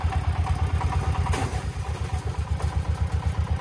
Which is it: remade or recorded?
recorded